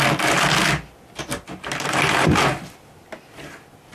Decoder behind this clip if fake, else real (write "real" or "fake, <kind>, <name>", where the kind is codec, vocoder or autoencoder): real